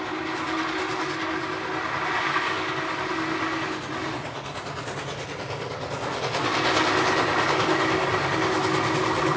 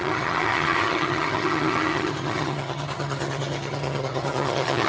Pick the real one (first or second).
first